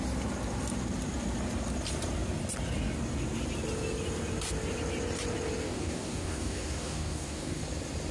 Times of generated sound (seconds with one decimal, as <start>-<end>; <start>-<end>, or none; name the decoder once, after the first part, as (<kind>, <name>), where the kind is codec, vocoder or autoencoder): 5.6-7.6 (codec, DAC)

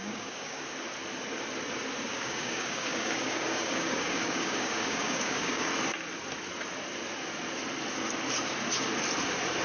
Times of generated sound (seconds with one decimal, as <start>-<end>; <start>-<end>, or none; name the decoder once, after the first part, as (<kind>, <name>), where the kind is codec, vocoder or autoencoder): 0.0-0.6 (codec, DAC); 2.1-5.7

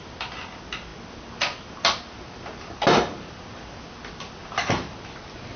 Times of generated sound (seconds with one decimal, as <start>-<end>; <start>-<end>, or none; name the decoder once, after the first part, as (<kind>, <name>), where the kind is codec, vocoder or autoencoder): none

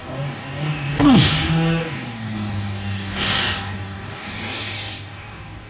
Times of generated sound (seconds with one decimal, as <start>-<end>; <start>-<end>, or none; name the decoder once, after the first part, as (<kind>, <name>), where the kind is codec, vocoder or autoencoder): 0.0-5.7 (codec, DAC)

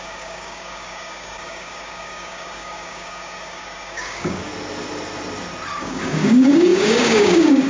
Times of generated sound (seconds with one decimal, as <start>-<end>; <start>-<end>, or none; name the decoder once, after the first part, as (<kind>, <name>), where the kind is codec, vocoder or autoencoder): 0.0-4.5 (codec, DAC); 5.8-7.7

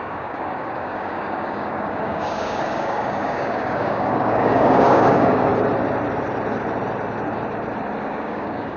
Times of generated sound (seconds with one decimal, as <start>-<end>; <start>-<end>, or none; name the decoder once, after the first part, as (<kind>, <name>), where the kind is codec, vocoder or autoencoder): 0.0-5.5 (codec, DAC); 8.0-8.8

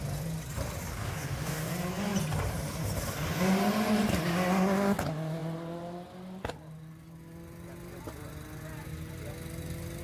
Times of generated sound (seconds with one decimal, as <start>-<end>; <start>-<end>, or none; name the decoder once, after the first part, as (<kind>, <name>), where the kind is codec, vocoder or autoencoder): 0.9-1.7 (codec, DAC)